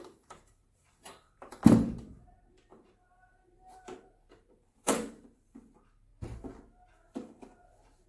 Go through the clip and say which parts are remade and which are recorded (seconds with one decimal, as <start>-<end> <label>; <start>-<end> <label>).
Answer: 0.0-6.1 remade; 6.1-7.1 recorded; 7.1-8.1 remade